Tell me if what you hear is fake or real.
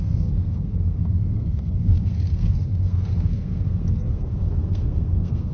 fake